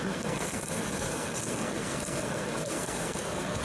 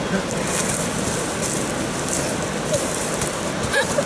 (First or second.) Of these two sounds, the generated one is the first